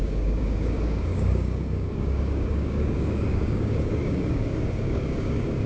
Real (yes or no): no